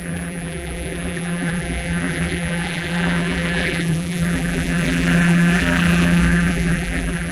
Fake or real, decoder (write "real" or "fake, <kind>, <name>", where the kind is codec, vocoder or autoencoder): fake, vocoder, BigVGAN v2